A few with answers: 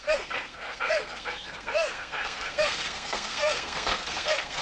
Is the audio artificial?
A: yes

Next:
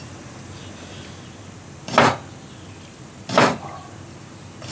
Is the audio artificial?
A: no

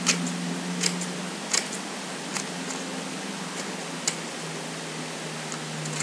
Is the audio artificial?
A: no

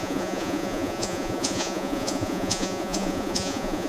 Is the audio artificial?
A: yes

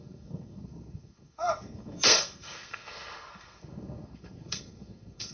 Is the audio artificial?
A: yes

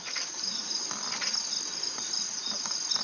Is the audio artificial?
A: no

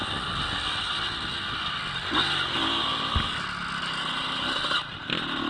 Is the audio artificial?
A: no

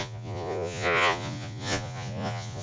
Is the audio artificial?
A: yes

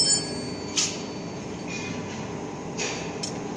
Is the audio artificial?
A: no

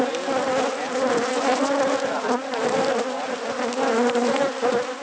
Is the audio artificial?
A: no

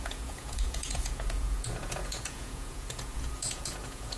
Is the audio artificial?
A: yes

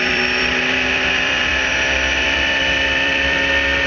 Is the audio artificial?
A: yes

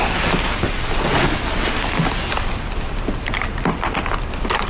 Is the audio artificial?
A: no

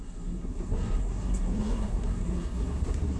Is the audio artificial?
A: yes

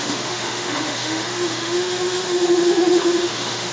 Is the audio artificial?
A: yes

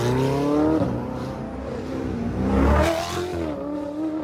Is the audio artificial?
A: no